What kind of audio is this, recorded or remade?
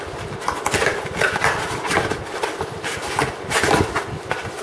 recorded